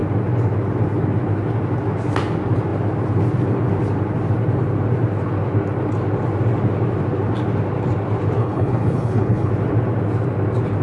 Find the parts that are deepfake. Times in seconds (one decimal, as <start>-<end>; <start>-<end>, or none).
8.4-9.5